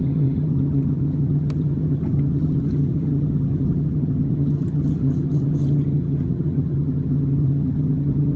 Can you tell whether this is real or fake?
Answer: fake